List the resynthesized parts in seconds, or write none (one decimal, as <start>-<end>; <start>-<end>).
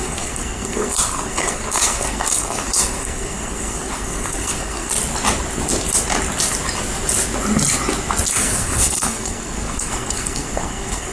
0.0-4.9; 8.3-11.1